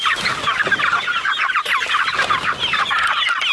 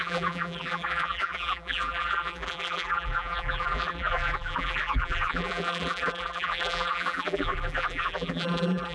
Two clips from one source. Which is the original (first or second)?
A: first